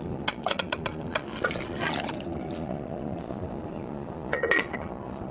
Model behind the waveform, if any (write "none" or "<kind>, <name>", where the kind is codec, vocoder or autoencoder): vocoder, Vocos